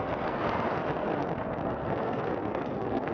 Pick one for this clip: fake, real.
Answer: fake